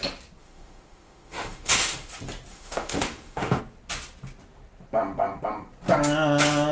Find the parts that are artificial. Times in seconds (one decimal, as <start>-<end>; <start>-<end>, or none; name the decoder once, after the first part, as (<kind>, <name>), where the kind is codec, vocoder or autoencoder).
0.4-2.1 (autoencoder, DAC-VAE); 2.5-3.6